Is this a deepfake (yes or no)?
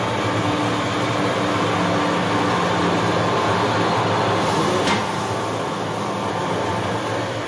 no